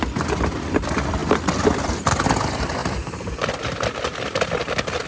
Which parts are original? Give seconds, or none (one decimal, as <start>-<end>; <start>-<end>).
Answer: 0.0-2.8; 3.3-5.1